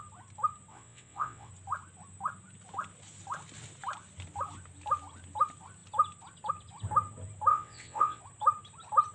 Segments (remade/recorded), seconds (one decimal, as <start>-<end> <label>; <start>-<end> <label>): 0.0-0.7 recorded; 0.7-1.5 remade; 1.5-7.5 recorded; 7.5-8.2 remade; 8.2-9.1 recorded